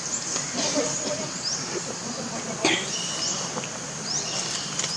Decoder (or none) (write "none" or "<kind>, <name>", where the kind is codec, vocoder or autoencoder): none